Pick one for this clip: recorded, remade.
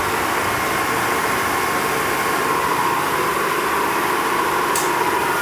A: remade